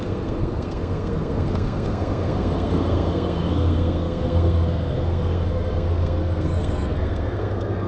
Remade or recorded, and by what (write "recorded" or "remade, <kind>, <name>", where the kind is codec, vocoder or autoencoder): remade, codec, SNAC